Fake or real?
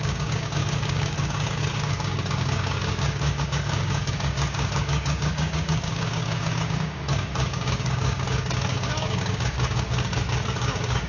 fake